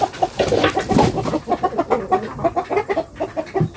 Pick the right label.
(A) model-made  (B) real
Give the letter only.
B